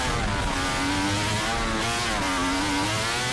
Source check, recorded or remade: recorded